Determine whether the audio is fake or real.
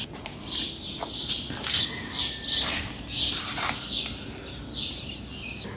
real